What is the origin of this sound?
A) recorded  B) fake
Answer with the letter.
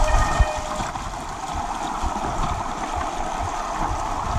A